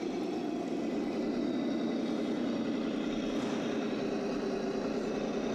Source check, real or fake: real